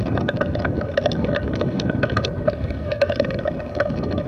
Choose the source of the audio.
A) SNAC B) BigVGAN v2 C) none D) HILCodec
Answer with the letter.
A